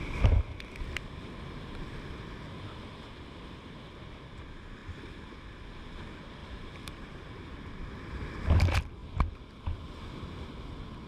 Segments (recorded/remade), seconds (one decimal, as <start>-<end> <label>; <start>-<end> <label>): 0.0-6.4 recorded; 6.4-7.6 remade; 7.6-11.1 recorded